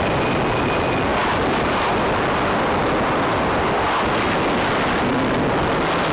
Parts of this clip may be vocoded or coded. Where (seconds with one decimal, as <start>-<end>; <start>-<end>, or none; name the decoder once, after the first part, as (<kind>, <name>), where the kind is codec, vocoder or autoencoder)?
none